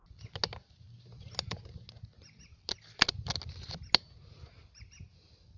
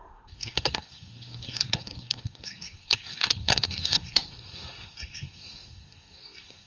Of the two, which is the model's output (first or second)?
second